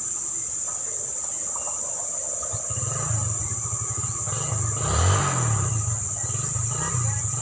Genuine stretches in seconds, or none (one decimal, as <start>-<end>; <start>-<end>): 0.0-7.4